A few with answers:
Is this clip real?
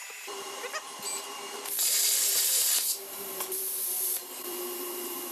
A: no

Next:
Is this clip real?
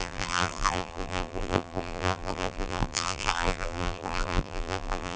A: no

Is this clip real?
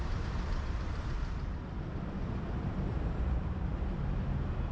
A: no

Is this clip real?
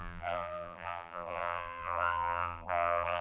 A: no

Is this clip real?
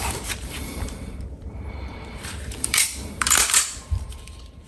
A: no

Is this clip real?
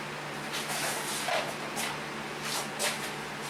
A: yes